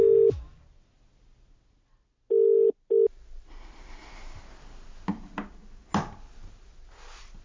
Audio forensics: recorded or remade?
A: recorded